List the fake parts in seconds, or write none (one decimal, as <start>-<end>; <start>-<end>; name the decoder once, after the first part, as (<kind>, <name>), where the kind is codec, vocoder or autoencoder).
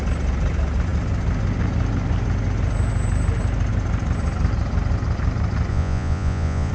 5.7-6.7 (vocoder, Vocos)